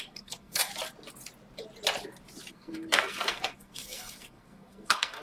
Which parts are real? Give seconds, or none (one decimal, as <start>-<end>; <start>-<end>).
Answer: 0.7-2.5